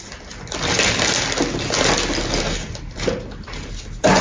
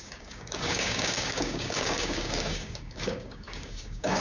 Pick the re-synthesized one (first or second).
second